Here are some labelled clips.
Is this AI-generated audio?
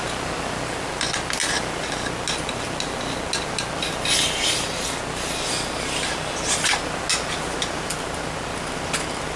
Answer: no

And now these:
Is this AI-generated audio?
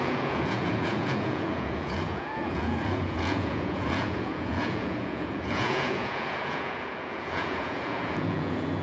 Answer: yes